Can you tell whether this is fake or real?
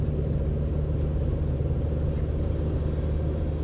real